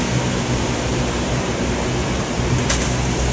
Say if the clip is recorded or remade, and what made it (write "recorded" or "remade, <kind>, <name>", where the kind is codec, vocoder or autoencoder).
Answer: recorded